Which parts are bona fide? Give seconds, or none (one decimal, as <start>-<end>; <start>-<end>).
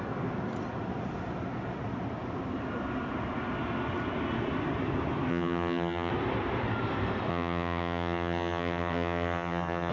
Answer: 0.0-5.3; 6.1-7.3